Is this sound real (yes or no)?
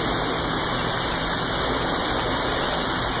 yes